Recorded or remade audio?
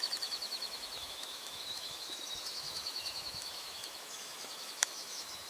remade